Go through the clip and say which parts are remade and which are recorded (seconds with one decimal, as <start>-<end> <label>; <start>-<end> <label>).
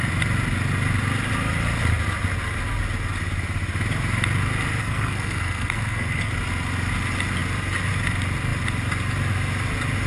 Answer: 0.0-4.8 recorded; 4.8-6.3 remade; 6.3-10.1 recorded